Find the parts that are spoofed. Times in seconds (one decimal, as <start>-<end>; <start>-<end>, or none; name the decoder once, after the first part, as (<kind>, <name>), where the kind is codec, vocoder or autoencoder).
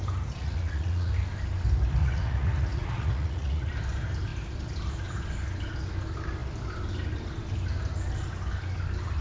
0.4-1.1 (vocoder, Vocos); 2.0-3.7